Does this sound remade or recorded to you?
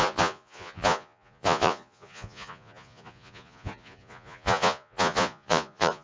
remade